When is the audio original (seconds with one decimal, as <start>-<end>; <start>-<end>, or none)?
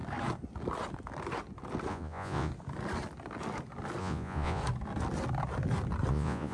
0.0-1.9; 2.5-4.0; 4.6-6.1